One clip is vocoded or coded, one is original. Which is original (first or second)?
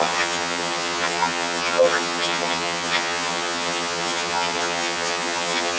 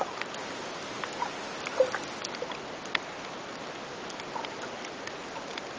second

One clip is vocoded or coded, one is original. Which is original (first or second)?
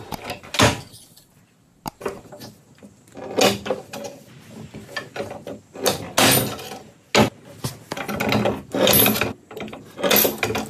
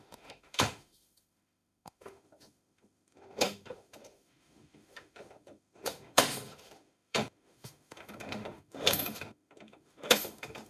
first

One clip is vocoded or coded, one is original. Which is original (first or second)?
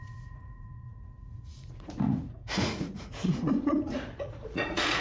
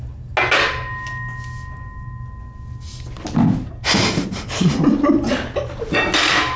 second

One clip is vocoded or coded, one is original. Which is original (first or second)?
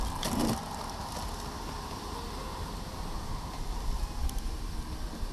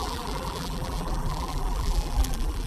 first